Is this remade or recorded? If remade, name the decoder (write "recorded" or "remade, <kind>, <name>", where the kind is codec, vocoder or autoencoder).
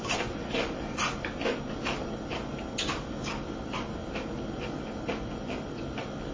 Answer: recorded